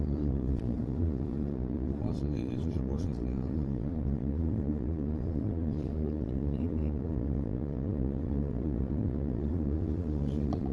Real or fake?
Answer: fake